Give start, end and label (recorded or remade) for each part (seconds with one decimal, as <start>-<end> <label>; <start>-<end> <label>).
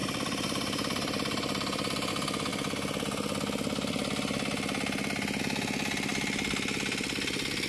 0.0-2.1 remade; 2.1-7.7 recorded